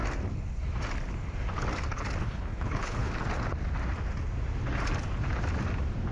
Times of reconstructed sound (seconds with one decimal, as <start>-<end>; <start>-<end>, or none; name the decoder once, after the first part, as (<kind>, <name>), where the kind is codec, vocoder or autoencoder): 2.2-3.1 (codec, HILCodec)